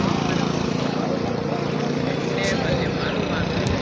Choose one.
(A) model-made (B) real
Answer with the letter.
B